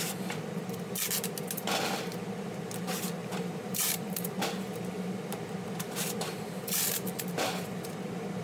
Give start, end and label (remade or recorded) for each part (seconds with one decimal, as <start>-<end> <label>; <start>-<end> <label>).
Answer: 0.0-3.2 recorded; 3.2-7.7 remade; 7.7-8.4 recorded